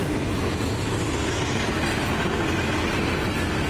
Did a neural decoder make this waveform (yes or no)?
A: no